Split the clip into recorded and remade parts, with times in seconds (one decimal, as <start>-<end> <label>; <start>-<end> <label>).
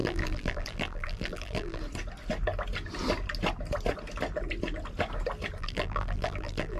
0.0-1.8 remade; 1.8-5.6 recorded; 5.6-6.8 remade